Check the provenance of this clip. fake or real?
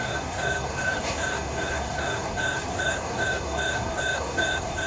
fake